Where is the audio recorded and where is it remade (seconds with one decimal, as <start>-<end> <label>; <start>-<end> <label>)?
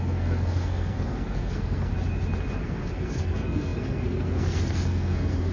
0.0-1.9 remade; 1.9-2.6 recorded; 2.6-5.5 remade